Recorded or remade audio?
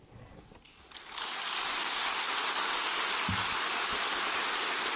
recorded